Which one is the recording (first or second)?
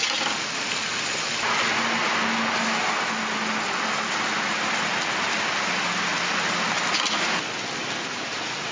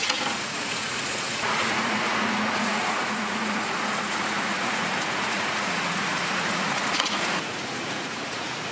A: first